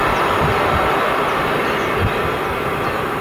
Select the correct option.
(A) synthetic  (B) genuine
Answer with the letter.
B